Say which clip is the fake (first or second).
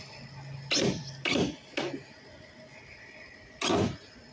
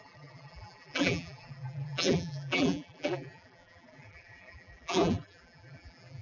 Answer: second